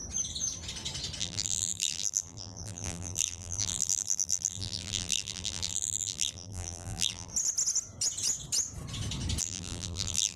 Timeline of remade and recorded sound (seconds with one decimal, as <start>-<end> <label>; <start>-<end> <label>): 0.0-1.2 recorded; 1.2-7.3 remade; 7.3-9.4 recorded; 9.4-10.4 remade